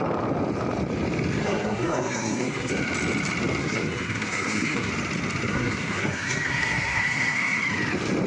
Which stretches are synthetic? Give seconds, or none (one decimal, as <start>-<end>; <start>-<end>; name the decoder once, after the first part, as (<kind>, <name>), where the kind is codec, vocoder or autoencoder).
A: 1.4-2.7 (codec, SNAC); 3.6-4.9; 5.5-7.6